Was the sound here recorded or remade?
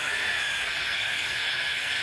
remade